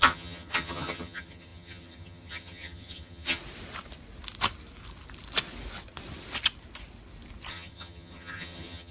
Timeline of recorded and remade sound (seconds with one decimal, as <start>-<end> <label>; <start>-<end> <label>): 0.0-3.4 remade; 3.4-7.5 recorded; 7.5-8.9 remade